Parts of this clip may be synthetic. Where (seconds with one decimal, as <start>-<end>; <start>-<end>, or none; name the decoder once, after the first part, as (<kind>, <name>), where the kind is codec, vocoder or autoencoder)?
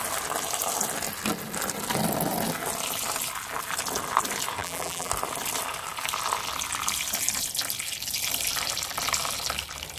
4.6-5.1 (vocoder, BigVGAN v2)